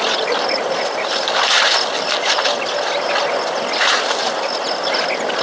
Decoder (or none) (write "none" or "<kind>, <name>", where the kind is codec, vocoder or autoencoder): none